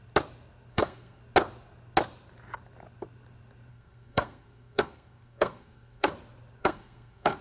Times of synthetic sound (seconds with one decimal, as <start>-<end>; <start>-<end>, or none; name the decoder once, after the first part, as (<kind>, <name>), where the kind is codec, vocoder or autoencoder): 0.7-1.2 (codec, SNAC); 3.7-6.1; 6.6-7.4